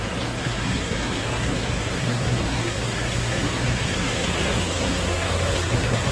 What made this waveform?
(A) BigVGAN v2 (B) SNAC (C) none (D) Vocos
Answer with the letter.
B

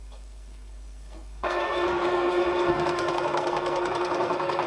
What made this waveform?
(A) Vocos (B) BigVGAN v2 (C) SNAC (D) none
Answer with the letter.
C